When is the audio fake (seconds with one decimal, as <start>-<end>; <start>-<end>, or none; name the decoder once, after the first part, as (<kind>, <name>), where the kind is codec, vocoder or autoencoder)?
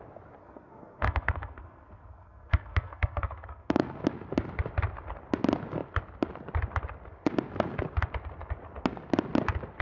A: 0.4-4.0 (codec, SNAC)